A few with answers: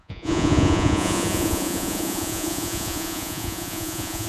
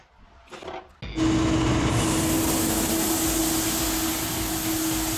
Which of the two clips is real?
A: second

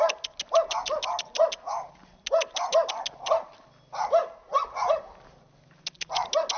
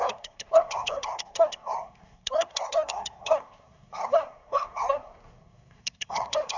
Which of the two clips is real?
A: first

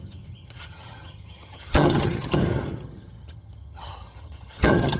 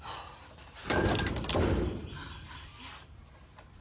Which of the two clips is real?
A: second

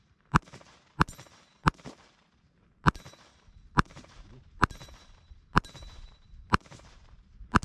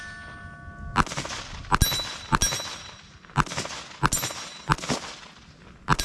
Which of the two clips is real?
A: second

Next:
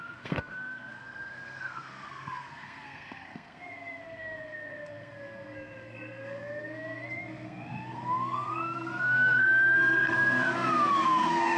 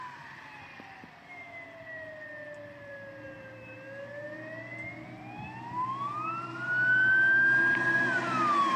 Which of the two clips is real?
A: second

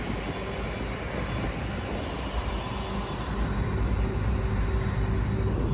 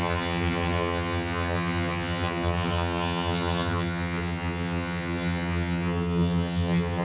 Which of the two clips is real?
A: first